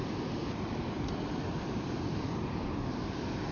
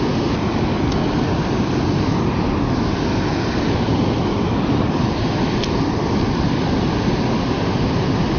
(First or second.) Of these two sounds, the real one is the second